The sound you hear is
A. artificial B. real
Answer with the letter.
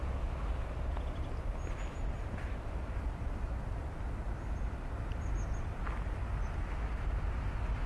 B